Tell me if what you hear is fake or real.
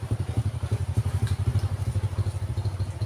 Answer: real